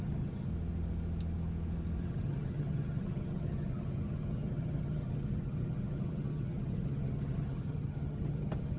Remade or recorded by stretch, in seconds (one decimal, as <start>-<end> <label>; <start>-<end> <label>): 0.0-0.5 remade; 0.5-2.0 recorded; 2.0-8.8 remade